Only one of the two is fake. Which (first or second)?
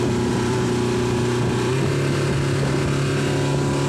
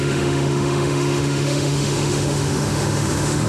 second